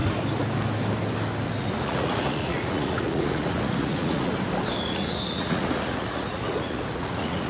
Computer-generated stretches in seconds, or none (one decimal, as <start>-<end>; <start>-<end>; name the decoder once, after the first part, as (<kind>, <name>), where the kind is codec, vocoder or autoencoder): 1.8-4.3 (vocoder, Vocos); 4.8-7.5